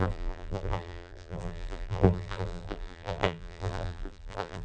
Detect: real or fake fake